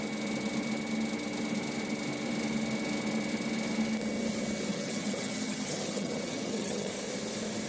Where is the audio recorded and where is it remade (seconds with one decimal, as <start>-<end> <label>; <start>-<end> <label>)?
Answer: 0.0-4.7 recorded; 4.7-6.9 remade; 6.9-7.7 recorded